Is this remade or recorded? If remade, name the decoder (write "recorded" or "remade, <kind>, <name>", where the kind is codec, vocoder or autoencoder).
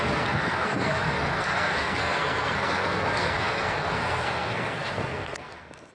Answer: remade, codec, SNAC